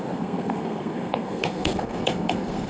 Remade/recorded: remade